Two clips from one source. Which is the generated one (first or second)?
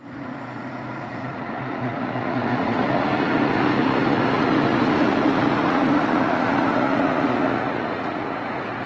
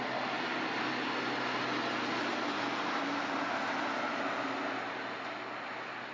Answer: first